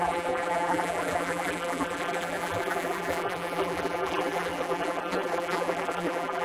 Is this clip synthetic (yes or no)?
yes